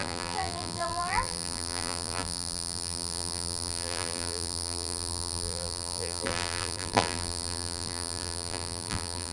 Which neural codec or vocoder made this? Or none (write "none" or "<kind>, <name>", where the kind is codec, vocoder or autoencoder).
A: vocoder, BigVGAN v2